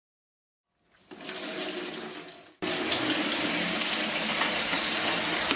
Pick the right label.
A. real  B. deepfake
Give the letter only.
A